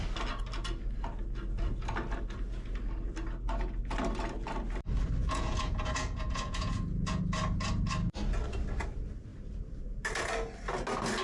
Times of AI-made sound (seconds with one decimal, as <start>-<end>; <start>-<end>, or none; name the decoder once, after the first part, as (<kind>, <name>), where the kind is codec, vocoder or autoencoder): 5.2-7.2 (vocoder, Vocos)